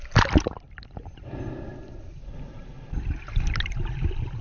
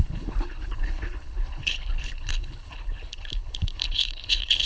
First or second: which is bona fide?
first